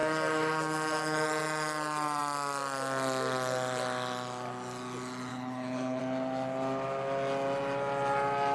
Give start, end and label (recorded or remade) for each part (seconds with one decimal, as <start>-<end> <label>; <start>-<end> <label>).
0.0-5.3 recorded; 5.3-6.0 remade; 6.0-8.5 recorded